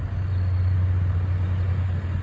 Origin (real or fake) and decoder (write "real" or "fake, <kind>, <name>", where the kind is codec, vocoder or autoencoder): real